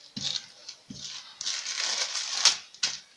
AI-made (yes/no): no